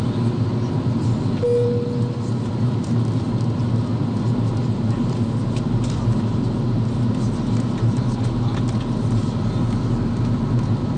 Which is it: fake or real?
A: real